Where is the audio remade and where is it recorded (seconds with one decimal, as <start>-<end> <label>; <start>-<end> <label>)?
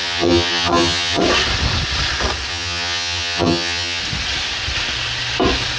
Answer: 0.0-1.2 remade; 1.2-2.5 recorded; 2.5-4.0 remade; 4.0-5.8 recorded